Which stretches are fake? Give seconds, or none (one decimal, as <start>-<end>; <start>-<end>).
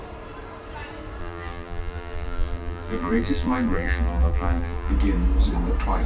1.2-4.9